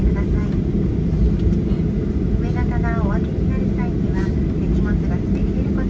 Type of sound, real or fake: real